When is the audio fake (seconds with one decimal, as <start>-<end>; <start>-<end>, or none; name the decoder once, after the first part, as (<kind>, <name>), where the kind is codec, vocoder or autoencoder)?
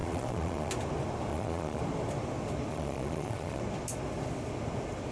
0.0-0.7 (vocoder, Vocos); 1.3-1.8; 2.7-3.6